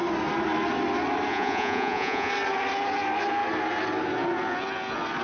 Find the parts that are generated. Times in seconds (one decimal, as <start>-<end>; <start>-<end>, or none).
1.3-2.3